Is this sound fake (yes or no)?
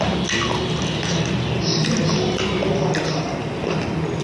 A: no